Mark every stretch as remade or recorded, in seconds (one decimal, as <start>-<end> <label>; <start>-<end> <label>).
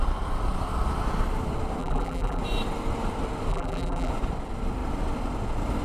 0.0-1.8 recorded; 1.8-2.4 remade; 2.4-3.5 recorded; 3.5-4.1 remade; 4.1-5.8 recorded